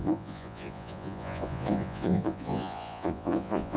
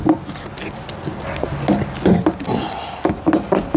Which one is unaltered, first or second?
second